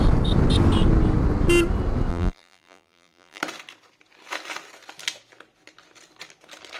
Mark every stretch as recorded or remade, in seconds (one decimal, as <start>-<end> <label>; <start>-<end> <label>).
0.0-2.1 recorded; 2.1-3.4 remade; 3.4-6.8 recorded